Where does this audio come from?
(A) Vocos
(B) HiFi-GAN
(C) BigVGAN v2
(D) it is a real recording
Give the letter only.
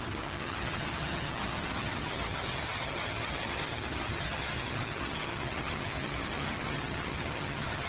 B